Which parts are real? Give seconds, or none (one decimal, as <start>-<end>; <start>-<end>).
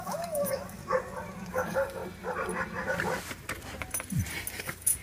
0.8-1.5; 2.0-4.6